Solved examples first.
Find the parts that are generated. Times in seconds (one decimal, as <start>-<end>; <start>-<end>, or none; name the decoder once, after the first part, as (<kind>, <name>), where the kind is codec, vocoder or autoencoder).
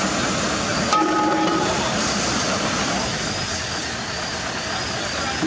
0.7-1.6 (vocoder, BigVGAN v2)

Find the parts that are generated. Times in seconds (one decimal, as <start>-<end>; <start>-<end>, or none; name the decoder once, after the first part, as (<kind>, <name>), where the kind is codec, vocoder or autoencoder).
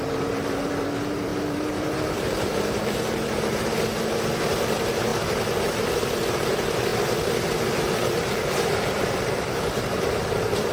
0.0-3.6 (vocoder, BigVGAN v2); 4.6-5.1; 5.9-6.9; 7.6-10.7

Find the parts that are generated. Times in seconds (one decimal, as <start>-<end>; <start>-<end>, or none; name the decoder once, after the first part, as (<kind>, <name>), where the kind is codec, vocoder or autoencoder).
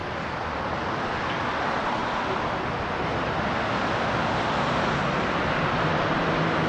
0.8-2.0 (vocoder, BigVGAN v2); 5.4-6.7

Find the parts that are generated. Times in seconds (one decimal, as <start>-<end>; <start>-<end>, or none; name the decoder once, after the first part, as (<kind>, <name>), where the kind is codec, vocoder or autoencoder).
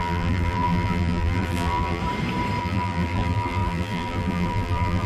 0.0-2.0 (vocoder, BigVGAN v2); 2.6-5.1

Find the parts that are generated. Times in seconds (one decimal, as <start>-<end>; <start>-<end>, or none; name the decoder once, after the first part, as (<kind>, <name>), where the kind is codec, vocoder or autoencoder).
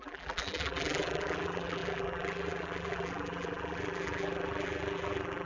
0.0-5.5 (vocoder, BigVGAN v2)